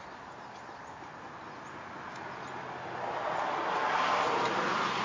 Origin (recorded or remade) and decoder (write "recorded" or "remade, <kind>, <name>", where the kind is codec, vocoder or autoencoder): recorded